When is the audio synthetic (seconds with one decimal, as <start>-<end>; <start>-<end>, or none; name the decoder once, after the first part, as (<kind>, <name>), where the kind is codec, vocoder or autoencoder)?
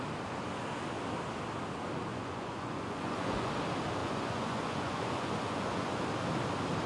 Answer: 2.1-3.5 (vocoder, Vocos); 4.0-6.0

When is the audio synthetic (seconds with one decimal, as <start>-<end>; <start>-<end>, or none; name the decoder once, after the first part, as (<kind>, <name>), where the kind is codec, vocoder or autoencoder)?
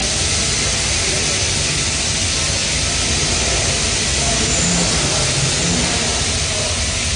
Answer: none